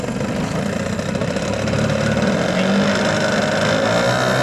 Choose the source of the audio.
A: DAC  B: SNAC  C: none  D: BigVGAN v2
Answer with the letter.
C